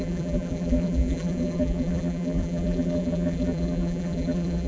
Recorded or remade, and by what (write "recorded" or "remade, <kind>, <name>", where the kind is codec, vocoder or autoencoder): remade, vocoder, BigVGAN v2